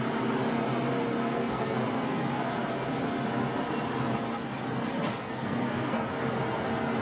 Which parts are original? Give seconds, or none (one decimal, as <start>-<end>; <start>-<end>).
0.0-1.2; 2.5-5.1; 6.1-7.0